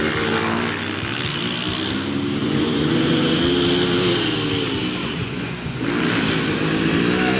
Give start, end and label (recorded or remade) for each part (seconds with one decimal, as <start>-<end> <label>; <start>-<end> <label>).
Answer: 0.0-2.4 recorded; 2.4-3.4 remade; 3.4-5.0 recorded; 5.0-5.8 remade; 5.8-7.4 recorded